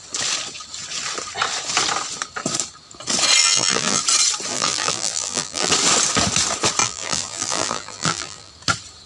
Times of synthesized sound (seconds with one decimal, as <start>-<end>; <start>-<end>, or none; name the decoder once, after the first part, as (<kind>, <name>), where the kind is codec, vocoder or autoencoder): 3.4-4.0 (vocoder, BigVGAN v2); 4.5-5.7; 6.8-8.5